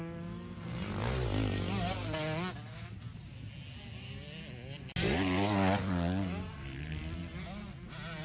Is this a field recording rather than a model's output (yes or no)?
yes